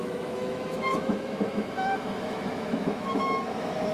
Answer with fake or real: fake